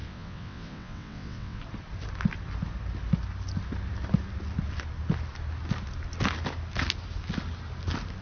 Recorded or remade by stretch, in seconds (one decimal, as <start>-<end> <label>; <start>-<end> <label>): 0.0-1.6 remade; 1.6-8.2 recorded